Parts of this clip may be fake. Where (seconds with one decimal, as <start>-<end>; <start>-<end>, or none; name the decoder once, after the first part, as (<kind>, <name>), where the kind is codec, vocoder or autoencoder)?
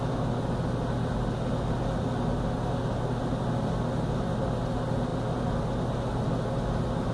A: none